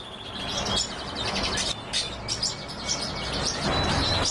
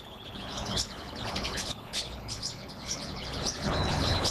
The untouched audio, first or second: first